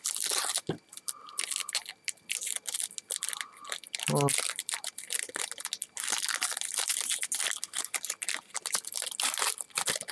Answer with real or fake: real